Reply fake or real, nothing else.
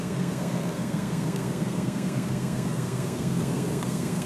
fake